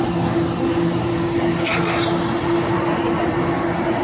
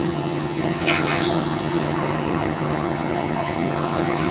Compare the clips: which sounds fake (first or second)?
second